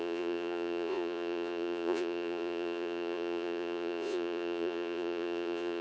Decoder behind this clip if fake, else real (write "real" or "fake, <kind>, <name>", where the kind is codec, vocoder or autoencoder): fake, vocoder, Vocos